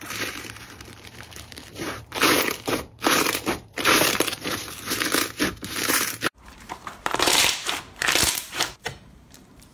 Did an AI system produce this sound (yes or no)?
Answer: yes